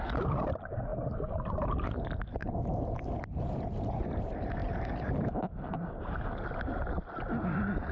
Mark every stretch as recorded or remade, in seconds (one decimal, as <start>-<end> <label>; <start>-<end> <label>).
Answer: 0.0-7.9 recorded